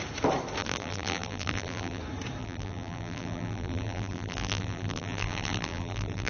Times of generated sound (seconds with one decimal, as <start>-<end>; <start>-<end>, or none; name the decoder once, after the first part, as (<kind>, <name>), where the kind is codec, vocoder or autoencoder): 0.6-2.0 (vocoder, BigVGAN v2); 2.4-6.3